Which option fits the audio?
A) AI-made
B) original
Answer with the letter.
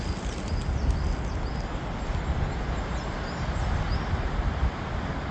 B